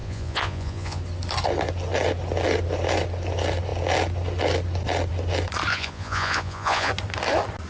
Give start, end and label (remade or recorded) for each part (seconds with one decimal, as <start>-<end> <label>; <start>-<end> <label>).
0.0-1.0 remade; 1.0-5.7 recorded; 5.7-6.9 remade; 6.9-7.7 recorded